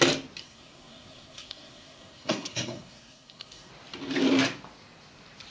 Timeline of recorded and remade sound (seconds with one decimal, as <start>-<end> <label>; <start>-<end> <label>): 0.0-0.4 recorded; 0.4-3.7 remade; 3.7-5.5 recorded